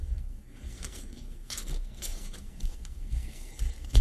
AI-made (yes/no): yes